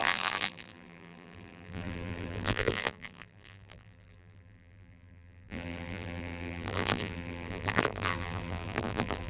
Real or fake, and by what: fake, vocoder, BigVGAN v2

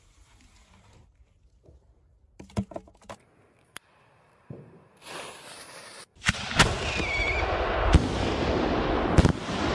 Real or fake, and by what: real